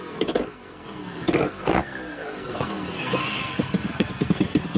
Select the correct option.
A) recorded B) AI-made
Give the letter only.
B